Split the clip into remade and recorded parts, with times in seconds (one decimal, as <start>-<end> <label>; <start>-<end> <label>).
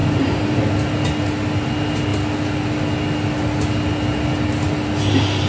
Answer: 0.0-5.5 recorded